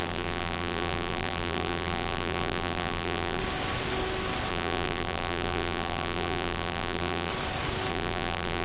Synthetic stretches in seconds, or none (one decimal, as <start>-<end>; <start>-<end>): 0.0-3.4; 4.5-7.3; 7.9-8.6